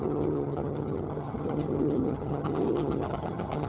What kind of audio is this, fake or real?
fake